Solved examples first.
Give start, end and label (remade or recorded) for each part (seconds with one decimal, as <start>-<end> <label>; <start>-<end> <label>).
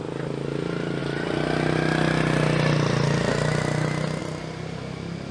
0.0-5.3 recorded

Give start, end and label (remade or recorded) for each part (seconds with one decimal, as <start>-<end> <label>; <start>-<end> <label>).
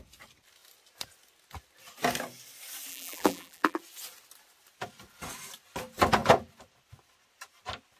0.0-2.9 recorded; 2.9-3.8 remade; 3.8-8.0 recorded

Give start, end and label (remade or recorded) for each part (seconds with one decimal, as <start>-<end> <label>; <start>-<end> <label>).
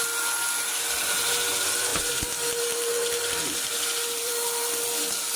0.0-1.9 recorded; 1.9-5.4 remade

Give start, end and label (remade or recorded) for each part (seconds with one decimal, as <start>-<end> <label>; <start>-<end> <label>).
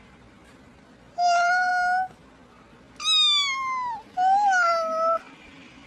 0.0-1.7 remade; 1.7-5.2 recorded; 5.2-5.9 remade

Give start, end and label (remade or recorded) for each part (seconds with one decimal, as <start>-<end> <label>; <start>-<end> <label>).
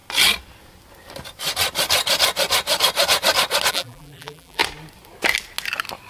0.0-3.7 recorded; 3.7-4.6 remade; 4.6-6.1 recorded